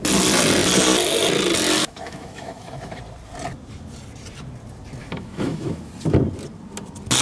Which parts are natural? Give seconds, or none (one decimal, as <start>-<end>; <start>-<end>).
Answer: 0.0-1.8; 3.0-5.0; 5.9-7.2

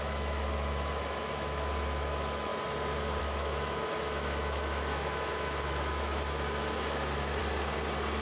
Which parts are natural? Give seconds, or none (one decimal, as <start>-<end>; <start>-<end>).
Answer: 2.5-3.2; 7.4-8.2

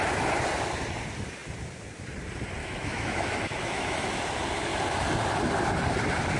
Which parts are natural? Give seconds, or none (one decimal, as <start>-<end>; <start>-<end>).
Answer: 0.0-2.6; 4.1-6.4

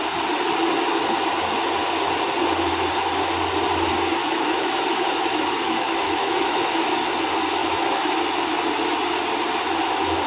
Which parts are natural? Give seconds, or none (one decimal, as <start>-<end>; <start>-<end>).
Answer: 0.0-4.2; 7.1-7.6; 8.2-10.3

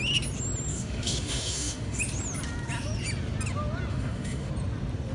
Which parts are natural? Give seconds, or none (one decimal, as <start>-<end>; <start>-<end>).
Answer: 0.0-0.7; 2.0-3.9; 4.5-5.1

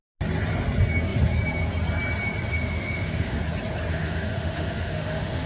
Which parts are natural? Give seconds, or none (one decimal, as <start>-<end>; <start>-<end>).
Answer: 0.0-2.5; 3.4-3.9